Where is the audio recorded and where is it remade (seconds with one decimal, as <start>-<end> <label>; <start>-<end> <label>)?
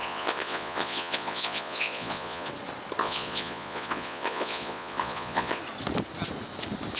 0.0-2.5 remade; 2.5-3.0 recorded; 3.0-5.6 remade; 5.6-7.0 recorded